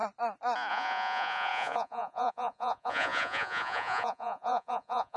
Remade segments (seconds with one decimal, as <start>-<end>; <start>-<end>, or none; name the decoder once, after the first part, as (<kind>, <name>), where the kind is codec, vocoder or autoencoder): 0.7-5.2 (vocoder, Vocos)